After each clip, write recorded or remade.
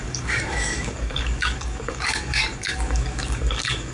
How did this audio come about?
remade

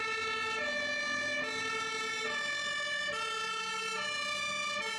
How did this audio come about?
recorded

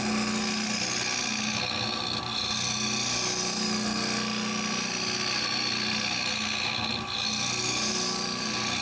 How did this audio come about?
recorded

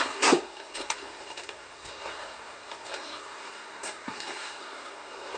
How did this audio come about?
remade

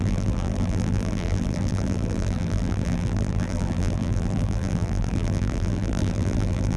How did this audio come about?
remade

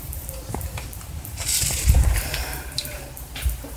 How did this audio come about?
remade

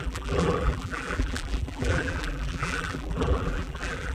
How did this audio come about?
remade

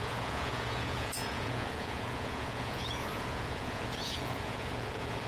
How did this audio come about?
remade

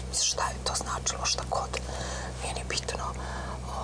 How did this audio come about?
recorded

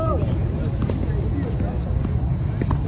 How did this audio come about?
recorded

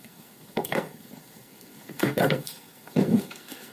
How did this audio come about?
remade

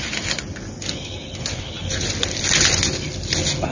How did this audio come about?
recorded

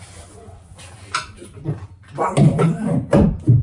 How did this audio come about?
recorded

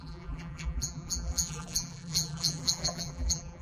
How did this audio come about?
remade